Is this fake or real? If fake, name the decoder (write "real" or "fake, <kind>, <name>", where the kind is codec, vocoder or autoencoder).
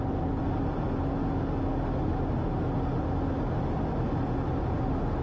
real